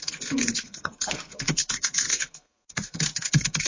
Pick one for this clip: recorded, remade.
remade